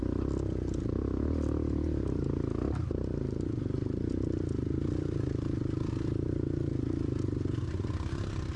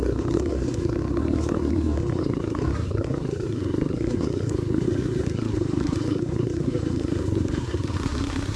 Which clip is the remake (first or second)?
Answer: second